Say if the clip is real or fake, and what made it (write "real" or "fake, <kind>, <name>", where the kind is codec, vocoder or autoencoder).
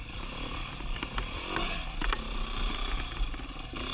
real